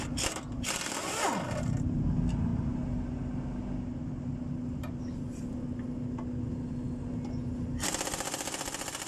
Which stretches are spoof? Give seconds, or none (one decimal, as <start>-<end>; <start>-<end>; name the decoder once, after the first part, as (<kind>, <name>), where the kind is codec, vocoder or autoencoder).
none